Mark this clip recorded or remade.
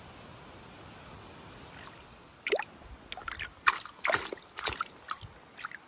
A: recorded